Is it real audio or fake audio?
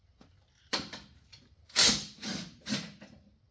fake